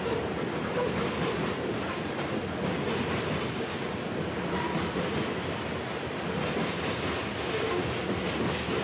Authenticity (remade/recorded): recorded